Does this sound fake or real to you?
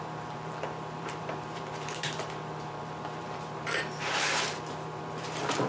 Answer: fake